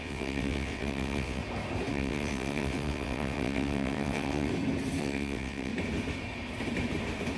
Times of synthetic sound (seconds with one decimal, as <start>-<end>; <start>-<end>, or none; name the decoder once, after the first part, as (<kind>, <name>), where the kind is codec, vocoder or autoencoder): 0.0-1.4 (vocoder, WaveNeXt); 1.9-4.5; 5.0-5.7